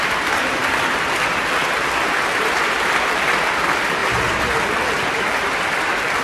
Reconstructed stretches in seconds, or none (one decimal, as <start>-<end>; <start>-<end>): 0.0-0.6; 3.4-4.0; 4.6-6.2